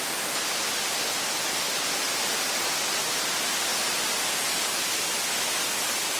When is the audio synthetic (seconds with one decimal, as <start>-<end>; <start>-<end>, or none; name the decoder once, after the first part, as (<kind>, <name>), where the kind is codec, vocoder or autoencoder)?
none